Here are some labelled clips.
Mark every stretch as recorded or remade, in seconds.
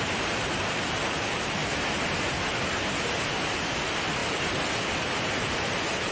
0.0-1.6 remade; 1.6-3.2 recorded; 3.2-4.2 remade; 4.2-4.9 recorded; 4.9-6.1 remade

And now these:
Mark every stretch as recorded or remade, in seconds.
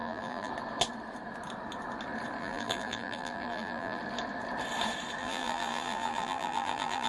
0.0-0.5 remade; 0.5-2.4 recorded; 2.4-4.0 remade; 4.0-5.2 recorded; 5.2-7.1 remade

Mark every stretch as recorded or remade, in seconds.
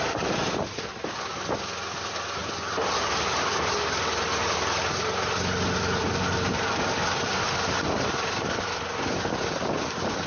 0.0-10.3 recorded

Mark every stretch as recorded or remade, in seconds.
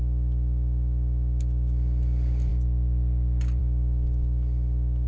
0.0-5.1 recorded